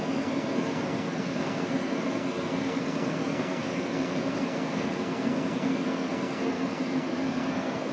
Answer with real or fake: fake